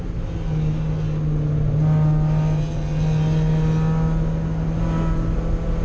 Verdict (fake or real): real